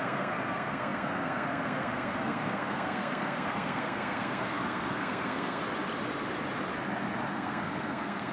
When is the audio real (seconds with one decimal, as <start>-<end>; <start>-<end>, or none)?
5.6-7.3